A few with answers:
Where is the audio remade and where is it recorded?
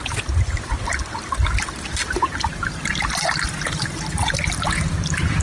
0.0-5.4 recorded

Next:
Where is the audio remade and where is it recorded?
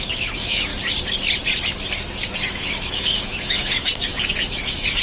0.0-0.7 remade; 0.7-2.4 recorded; 2.4-5.0 remade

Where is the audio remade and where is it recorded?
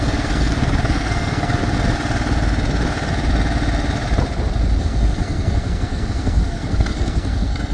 0.0-1.6 remade; 1.6-4.8 recorded; 4.8-7.7 remade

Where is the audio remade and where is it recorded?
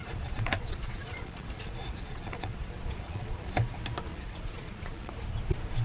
0.0-3.5 remade; 3.5-4.1 recorded; 4.1-5.1 remade; 5.1-5.8 recorded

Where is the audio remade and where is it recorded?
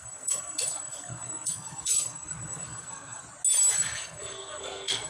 0.0-3.2 remade; 3.2-3.7 recorded; 3.7-5.1 remade